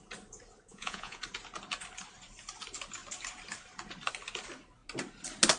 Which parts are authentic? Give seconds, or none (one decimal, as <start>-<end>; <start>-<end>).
0.0-0.7; 1.2-5.6